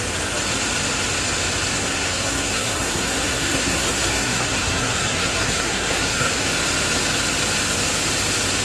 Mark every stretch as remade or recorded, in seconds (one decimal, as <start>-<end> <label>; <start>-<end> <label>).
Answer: 0.0-1.7 recorded; 1.7-6.5 remade; 6.5-8.6 recorded

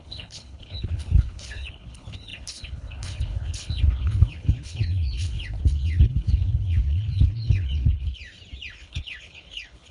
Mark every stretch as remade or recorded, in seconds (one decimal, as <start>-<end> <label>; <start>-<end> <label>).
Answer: 0.0-8.2 remade; 8.2-8.7 recorded; 8.7-9.9 remade

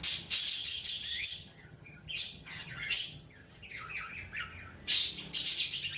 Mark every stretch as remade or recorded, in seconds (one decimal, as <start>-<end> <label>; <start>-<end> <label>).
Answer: 0.0-0.6 recorded; 0.6-4.2 remade; 4.2-6.0 recorded

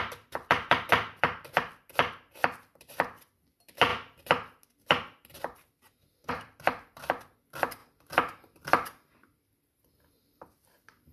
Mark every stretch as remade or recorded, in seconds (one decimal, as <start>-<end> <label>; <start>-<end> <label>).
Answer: 0.0-3.9 remade; 3.9-6.3 recorded; 6.3-7.8 remade; 7.8-10.2 recorded; 10.2-11.1 remade

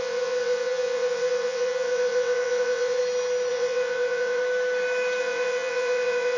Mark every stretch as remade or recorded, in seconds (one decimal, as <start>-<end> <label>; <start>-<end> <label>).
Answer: 0.0-3.0 remade; 3.0-3.5 recorded; 3.5-4.4 remade; 4.4-5.2 recorded; 5.2-6.4 remade

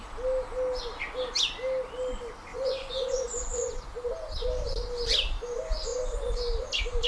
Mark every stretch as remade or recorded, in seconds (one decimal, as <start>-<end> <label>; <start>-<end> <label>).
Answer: 0.0-2.5 recorded; 2.5-3.8 remade; 3.8-7.1 recorded

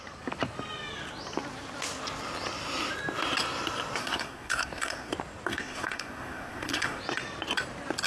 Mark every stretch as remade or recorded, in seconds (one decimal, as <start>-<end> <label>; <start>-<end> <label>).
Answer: 0.0-4.0 recorded; 4.0-5.1 remade; 5.1-5.5 recorded; 5.5-7.0 remade; 7.0-8.1 recorded